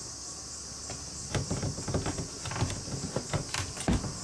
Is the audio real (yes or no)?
yes